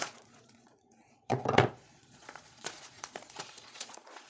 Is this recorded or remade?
remade